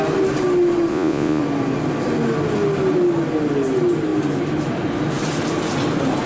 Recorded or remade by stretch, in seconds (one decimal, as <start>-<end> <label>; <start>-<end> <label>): 0.0-0.9 recorded; 0.9-1.4 remade; 1.4-6.3 recorded